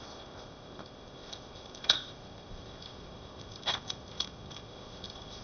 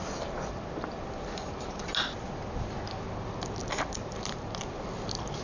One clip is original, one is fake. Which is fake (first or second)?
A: first